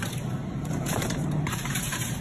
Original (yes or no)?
no